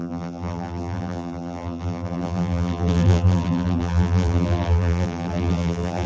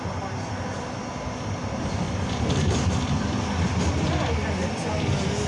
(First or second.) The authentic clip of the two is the second